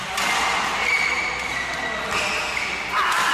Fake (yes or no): no